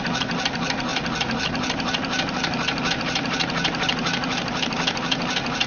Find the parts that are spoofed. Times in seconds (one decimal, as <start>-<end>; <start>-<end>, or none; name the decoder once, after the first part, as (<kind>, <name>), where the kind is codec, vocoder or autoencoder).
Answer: none